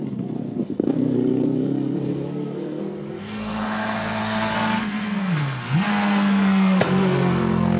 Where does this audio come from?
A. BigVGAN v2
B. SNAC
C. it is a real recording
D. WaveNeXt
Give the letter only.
B